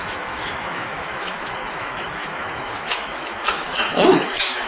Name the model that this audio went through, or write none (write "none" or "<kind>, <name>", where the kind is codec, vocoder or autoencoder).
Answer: autoencoder, DAC-VAE